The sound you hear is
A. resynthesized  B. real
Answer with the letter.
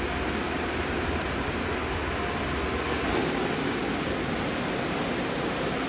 B